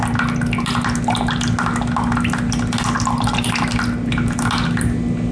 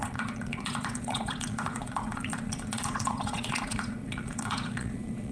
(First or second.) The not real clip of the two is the second